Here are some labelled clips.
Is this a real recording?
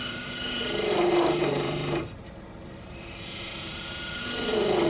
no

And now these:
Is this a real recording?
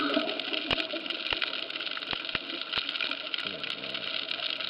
yes